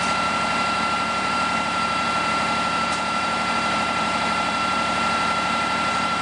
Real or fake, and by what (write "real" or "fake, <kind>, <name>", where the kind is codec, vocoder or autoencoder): fake, vocoder, BigVGAN v2